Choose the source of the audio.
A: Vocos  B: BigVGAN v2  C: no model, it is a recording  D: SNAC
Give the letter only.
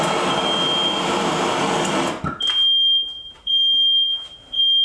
C